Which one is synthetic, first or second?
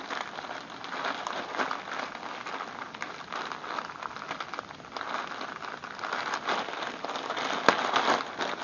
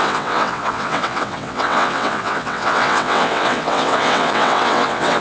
second